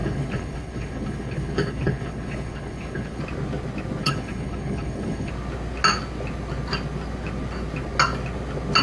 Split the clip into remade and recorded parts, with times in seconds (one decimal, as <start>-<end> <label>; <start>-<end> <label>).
0.0-3.2 remade; 3.2-4.0 recorded; 4.0-5.3 remade; 5.3-8.8 recorded